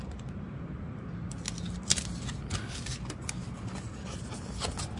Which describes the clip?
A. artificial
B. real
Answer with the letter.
B